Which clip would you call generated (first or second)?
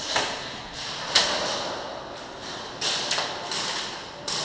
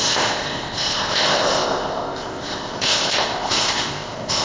second